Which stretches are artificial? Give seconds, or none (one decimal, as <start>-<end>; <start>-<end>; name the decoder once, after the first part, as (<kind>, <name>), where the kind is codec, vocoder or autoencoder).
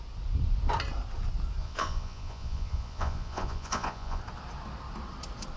1.6-4.2 (vocoder, Vocos)